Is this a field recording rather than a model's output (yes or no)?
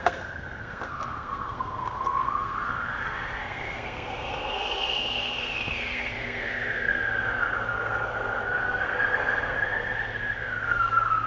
no